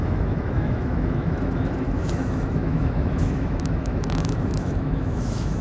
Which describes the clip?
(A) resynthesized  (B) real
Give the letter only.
A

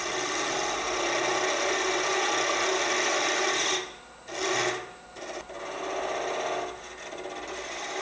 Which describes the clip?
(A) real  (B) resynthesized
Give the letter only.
A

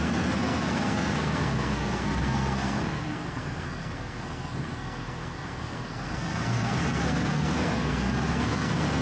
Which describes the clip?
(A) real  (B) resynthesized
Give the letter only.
B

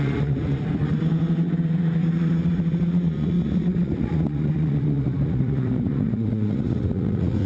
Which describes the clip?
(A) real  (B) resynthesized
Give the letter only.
B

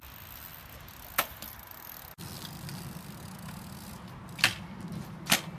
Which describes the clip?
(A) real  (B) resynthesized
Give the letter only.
A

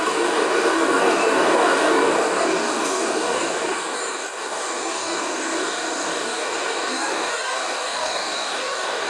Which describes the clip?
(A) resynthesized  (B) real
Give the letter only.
A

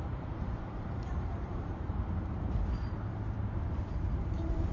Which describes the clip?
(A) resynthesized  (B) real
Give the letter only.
A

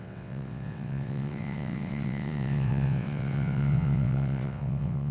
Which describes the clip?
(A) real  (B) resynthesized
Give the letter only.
B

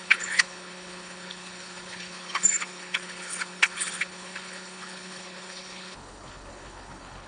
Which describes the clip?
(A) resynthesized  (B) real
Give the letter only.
A